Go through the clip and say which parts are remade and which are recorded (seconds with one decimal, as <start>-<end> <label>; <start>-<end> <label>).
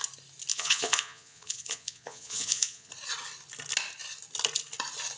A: 0.0-0.5 recorded; 0.5-2.9 remade; 2.9-5.2 recorded